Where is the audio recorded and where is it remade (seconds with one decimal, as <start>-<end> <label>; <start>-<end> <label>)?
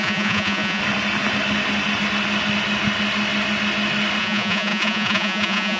0.0-0.8 remade; 0.8-4.2 recorded; 4.2-5.8 remade